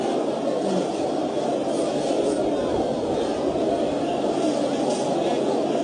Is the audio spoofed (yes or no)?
no